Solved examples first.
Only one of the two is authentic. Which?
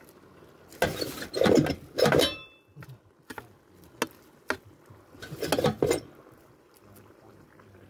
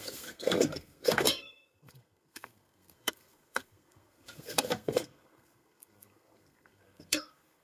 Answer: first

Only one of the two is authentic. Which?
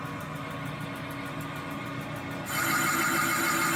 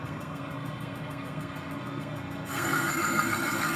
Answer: first